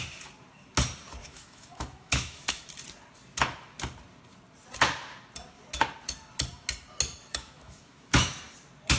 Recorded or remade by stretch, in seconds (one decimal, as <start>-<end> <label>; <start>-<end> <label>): 0.0-1.2 recorded; 1.2-2.7 remade; 2.7-7.3 recorded; 7.3-8.4 remade; 8.4-9.0 recorded